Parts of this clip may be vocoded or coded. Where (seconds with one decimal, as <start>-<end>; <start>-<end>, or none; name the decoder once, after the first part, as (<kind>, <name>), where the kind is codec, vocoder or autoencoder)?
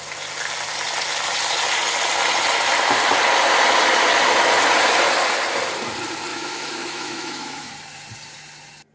6.3-7.7 (autoencoder, DAC-VAE)